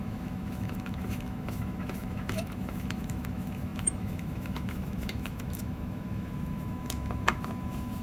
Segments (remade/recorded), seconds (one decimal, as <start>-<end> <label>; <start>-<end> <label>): 0.0-8.0 remade